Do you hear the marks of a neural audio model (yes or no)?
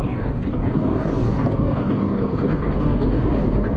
yes